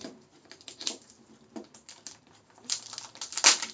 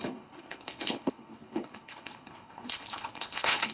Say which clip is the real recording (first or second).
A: first